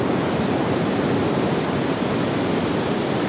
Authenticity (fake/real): real